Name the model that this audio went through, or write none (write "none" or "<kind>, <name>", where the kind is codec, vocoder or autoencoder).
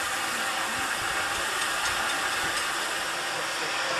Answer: none